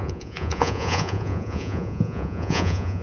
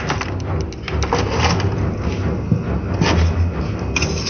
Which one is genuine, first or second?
second